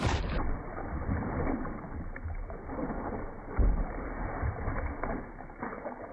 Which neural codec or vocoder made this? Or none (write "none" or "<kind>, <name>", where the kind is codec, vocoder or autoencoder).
none